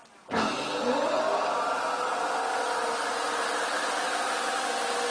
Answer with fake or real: real